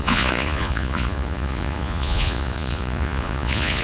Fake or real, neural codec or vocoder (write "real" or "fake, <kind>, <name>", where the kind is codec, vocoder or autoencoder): fake, vocoder, Vocos